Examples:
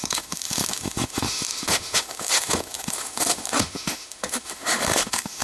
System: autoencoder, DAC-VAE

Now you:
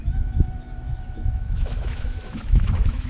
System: autoencoder, DAC-VAE